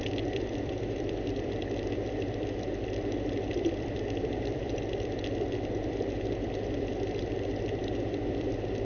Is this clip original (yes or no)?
no